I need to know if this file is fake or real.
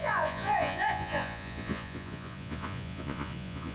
fake